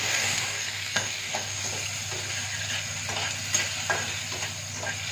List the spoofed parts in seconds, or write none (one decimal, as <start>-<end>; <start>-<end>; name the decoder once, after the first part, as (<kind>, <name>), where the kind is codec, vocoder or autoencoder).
0.0-1.6 (codec, DAC)